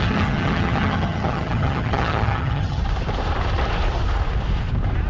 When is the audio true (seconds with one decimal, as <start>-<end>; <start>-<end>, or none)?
2.8-5.1